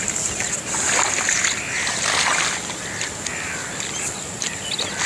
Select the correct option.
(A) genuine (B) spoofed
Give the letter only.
A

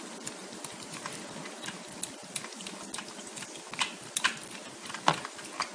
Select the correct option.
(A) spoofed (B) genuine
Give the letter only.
B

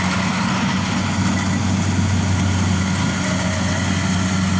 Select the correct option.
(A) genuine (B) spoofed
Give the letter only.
A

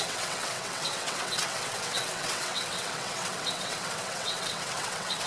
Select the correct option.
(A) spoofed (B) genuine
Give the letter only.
A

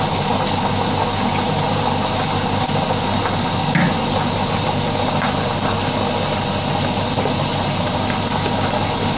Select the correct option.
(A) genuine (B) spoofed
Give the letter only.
A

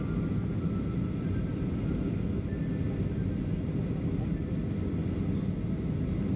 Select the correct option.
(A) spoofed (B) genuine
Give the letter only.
B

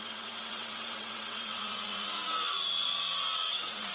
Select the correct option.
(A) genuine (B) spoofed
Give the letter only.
B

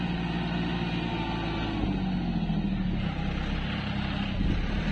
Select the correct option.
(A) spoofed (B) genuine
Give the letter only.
B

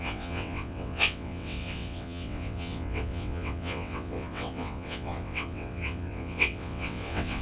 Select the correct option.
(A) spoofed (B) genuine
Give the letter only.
A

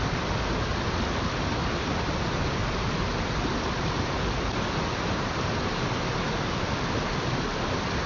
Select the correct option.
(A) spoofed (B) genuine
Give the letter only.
B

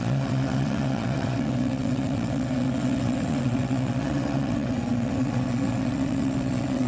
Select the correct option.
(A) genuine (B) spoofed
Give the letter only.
B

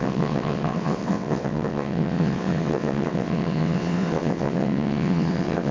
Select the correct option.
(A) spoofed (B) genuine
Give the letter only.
A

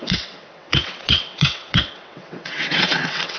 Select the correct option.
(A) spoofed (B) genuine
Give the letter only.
A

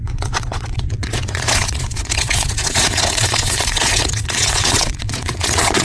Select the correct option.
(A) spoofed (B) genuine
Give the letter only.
A